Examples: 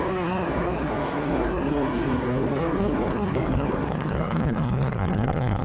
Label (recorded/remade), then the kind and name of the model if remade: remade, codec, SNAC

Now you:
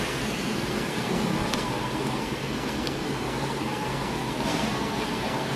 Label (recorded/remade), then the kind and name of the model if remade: remade, codec, SNAC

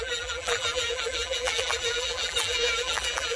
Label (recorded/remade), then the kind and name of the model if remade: remade, vocoder, BigVGAN v2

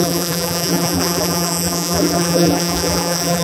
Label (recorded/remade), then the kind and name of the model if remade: remade, vocoder, BigVGAN v2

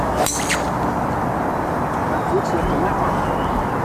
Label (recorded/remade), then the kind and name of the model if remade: recorded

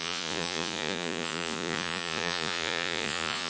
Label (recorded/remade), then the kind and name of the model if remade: remade, vocoder, Vocos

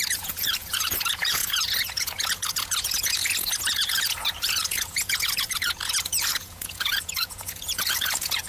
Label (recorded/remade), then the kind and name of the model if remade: remade, vocoder, Vocos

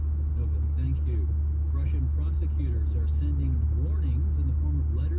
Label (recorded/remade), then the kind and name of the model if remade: recorded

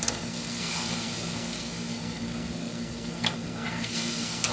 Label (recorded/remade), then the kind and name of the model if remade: remade, codec, SNAC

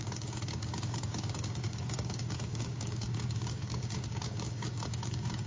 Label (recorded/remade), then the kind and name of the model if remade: remade, codec, DAC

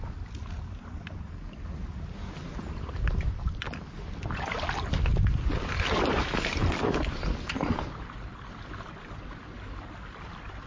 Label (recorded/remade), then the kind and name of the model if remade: recorded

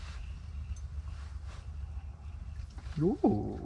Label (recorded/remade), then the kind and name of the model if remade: recorded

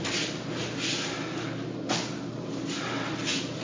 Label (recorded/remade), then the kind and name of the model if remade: recorded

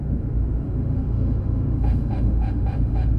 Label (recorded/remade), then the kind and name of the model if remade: remade, autoencoder, DAC-VAE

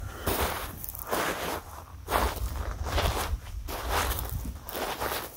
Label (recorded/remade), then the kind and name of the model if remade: recorded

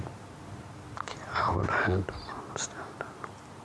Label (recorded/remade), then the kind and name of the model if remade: recorded